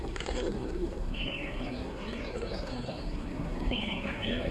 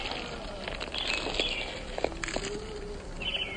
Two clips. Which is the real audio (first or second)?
second